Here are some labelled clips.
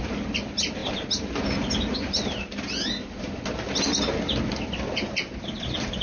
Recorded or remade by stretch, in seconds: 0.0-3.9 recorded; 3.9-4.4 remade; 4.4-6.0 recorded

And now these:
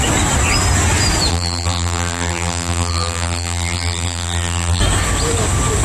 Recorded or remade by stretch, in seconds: 0.0-1.3 recorded; 1.3-4.8 remade; 4.8-5.8 recorded

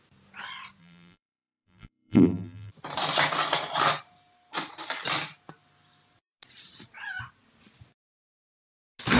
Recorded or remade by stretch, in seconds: 0.0-0.8 recorded; 0.8-2.7 remade; 2.7-9.2 recorded

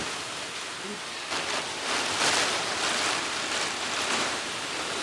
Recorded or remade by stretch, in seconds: 0.0-0.7 remade; 0.7-2.5 recorded; 2.5-5.0 remade

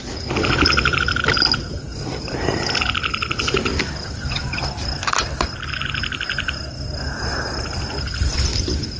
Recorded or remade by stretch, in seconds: 0.0-1.9 recorded; 1.9-2.6 remade; 2.6-3.7 recorded; 3.7-5.7 remade; 5.7-7.3 recorded; 7.3-9.0 remade

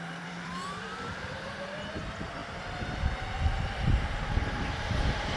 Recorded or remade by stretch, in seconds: 0.0-2.4 remade; 2.4-4.7 recorded; 4.7-5.4 remade

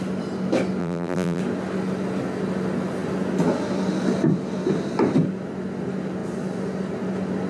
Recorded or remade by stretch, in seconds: 0.0-0.8 recorded; 0.8-1.4 remade; 1.4-7.5 recorded

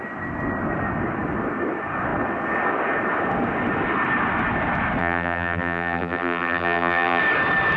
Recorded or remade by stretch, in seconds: 0.0-5.0 recorded; 5.0-7.2 remade; 7.2-7.8 recorded